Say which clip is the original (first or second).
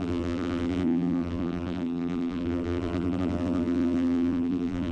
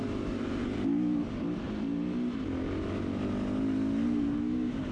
second